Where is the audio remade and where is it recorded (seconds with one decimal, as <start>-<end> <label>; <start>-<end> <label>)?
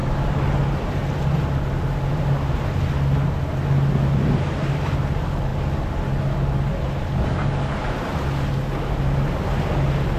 0.0-10.2 recorded